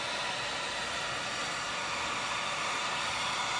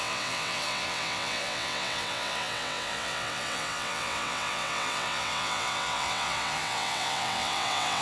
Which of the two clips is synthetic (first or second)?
second